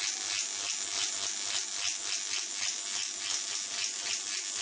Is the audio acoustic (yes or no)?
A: yes